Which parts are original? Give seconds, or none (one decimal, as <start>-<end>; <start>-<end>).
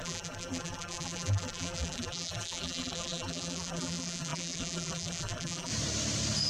5.7-6.5